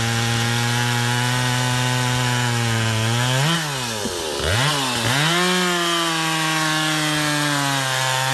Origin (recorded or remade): recorded